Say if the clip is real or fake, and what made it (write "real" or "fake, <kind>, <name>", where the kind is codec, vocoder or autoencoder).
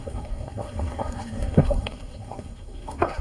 fake, codec, SNAC